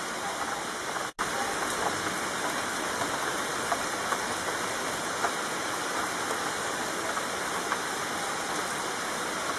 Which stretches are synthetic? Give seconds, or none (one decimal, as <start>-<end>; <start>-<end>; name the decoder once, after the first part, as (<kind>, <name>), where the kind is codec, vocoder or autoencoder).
none